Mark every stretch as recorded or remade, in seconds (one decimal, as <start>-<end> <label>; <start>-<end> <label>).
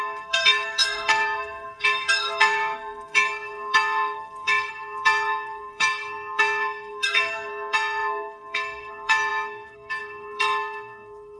0.0-11.4 remade